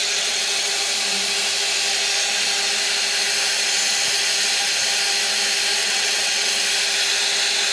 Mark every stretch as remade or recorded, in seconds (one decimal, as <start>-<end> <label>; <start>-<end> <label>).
0.0-0.7 remade; 0.7-5.8 recorded; 5.8-6.5 remade; 6.5-7.7 recorded